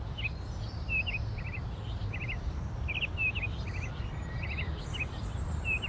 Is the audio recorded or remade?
remade